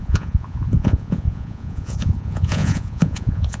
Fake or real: fake